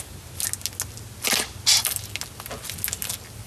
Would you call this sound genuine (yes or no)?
yes